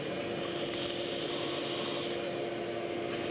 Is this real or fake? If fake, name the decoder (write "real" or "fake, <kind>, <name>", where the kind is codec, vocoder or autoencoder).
real